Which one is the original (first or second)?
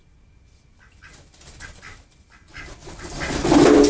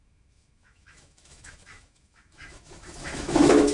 first